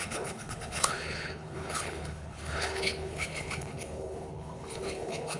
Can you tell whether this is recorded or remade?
remade